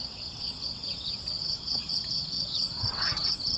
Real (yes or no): no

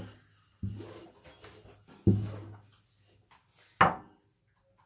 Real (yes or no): yes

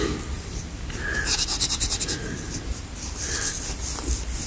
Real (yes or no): yes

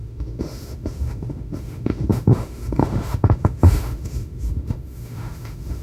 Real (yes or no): no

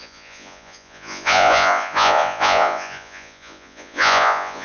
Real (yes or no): no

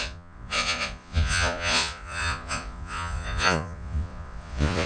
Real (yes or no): no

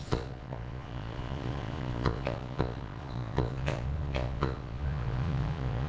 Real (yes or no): no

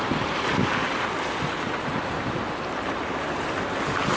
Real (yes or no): yes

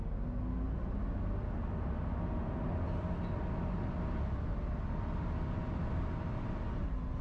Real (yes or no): yes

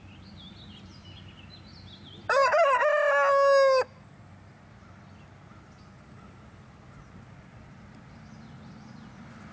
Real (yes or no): yes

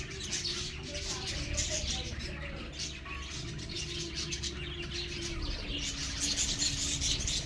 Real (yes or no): yes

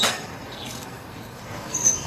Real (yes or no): no